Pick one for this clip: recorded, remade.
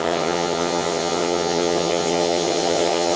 remade